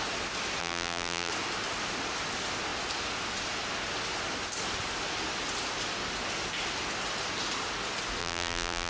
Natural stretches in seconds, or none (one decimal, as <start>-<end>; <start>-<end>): 0.0-0.6; 1.3-8.2